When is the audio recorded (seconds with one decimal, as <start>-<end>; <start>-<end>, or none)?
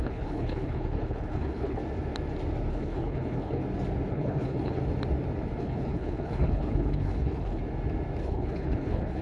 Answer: 1.8-2.7; 3.6-4.1; 4.8-5.6; 7.6-8.2